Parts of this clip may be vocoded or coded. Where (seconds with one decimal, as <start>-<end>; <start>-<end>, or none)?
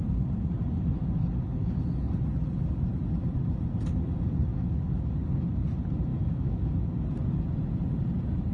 4.5-5.1; 6.1-6.7